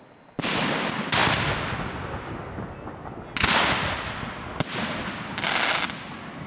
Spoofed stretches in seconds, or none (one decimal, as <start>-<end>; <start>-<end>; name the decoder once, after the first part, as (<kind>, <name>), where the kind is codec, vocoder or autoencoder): none